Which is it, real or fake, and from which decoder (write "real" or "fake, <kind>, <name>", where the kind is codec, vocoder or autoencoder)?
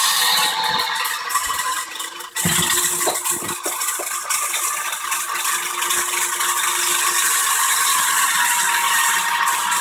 real